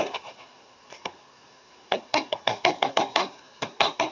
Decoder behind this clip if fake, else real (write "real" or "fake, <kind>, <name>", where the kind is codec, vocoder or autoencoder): fake, codec, SNAC